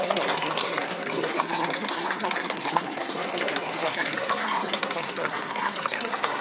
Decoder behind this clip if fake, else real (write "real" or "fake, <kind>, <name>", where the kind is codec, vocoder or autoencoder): fake, codec, SNAC